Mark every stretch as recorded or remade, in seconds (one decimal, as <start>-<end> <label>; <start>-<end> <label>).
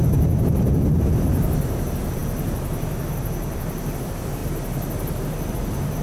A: 0.0-4.4 remade; 4.4-5.5 recorded; 5.5-6.0 remade